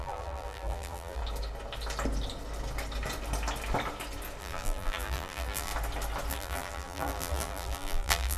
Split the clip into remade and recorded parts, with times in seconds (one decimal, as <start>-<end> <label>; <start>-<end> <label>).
0.0-1.2 remade; 1.2-4.4 recorded; 4.4-5.7 remade; 5.7-6.3 recorded; 6.3-8.4 remade